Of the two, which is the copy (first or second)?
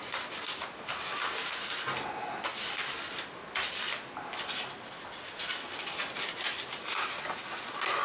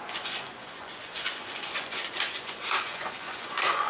second